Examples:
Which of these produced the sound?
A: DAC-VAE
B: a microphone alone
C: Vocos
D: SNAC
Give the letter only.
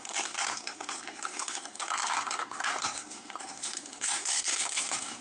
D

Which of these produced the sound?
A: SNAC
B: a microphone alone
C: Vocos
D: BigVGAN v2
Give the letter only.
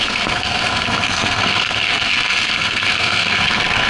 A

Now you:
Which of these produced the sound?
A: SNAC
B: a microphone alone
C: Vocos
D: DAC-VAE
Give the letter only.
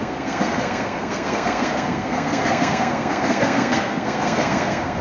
A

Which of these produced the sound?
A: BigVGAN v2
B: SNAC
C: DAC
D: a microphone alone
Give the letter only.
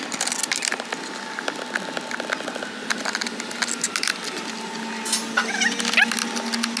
D